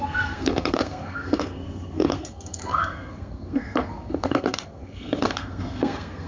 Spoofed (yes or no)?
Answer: yes